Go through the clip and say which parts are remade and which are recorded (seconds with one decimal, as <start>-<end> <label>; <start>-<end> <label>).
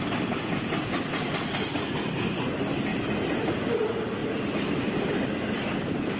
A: 0.0-2.9 remade; 2.9-3.4 recorded; 3.4-6.2 remade